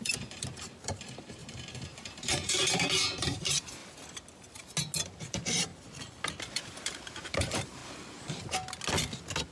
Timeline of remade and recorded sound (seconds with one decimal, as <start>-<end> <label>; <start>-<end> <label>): 0.0-3.8 remade; 3.8-5.0 recorded; 5.0-5.7 remade; 5.7-6.5 recorded; 6.5-7.8 remade; 7.8-9.5 recorded

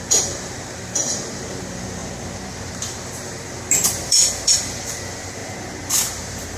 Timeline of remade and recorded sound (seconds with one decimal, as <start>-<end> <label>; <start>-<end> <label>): 0.0-6.6 remade

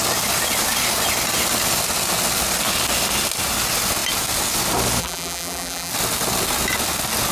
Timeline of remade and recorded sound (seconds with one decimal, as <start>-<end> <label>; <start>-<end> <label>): 0.0-5.0 recorded; 5.0-5.9 remade; 5.9-7.3 recorded

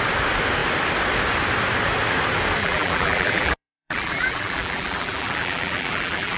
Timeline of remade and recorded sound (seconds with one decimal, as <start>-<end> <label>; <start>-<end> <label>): 0.0-2.6 recorded; 2.6-6.4 remade